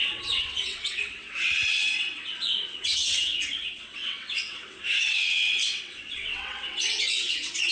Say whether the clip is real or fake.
fake